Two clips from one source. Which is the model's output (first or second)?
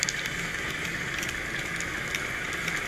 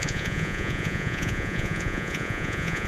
second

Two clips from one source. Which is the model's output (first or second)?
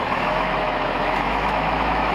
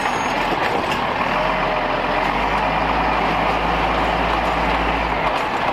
first